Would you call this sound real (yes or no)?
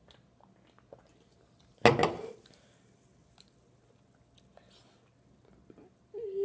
yes